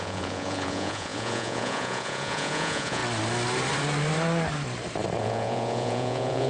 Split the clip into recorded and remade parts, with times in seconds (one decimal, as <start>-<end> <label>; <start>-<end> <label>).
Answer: 0.0-3.0 remade; 3.0-5.2 recorded; 5.2-6.5 remade